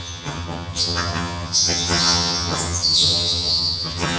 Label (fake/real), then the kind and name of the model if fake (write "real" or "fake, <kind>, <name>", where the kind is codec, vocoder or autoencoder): fake, vocoder, HiFi-GAN